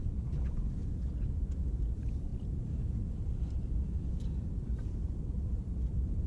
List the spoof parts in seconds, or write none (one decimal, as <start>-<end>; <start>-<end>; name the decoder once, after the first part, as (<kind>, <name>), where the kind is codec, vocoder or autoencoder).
0.0-0.8 (vocoder, BigVGAN v2); 1.3-6.3